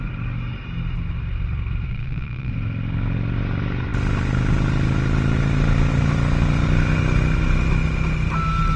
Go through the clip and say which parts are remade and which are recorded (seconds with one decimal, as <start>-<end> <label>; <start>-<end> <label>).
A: 0.0-1.9 recorded; 1.9-2.5 remade; 2.5-8.8 recorded